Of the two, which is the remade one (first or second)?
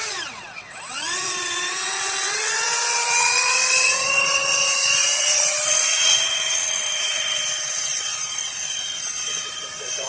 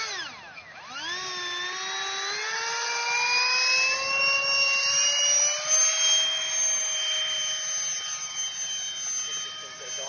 first